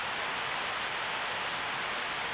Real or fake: real